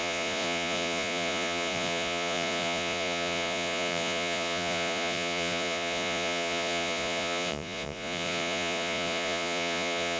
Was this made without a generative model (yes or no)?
no